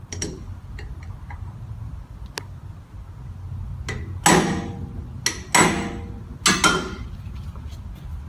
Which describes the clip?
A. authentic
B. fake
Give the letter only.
A